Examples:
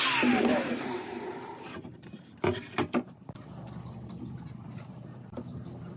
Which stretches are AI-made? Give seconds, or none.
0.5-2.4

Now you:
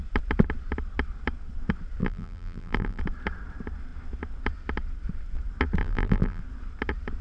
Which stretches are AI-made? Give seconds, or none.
2.0-3.0; 5.8-6.4

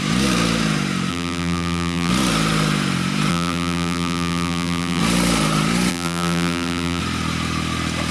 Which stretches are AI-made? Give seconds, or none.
1.1-2.1; 3.3-5.0; 5.9-7.0

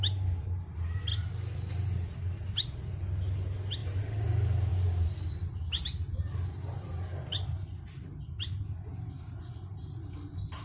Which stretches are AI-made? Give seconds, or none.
6.1-8.7

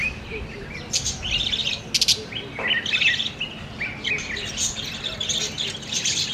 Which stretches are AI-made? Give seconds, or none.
0.0-0.8

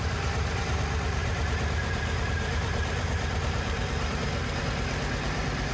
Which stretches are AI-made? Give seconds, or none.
1.2-4.6